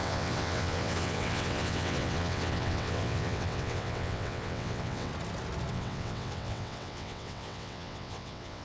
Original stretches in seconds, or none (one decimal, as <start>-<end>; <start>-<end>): 5.1-5.7